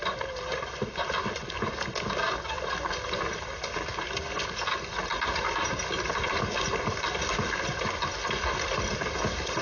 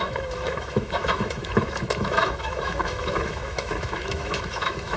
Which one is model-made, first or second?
second